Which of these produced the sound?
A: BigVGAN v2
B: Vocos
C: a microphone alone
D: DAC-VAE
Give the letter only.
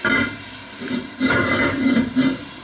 A